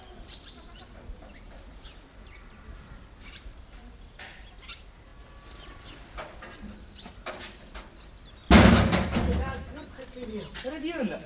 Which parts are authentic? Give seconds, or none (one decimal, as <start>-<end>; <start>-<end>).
0.0-11.3